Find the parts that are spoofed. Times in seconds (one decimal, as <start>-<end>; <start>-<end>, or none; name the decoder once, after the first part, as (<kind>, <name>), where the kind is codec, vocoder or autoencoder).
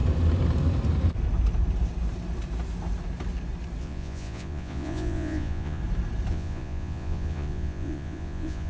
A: 3.8-5.8 (vocoder, Vocos); 6.3-8.7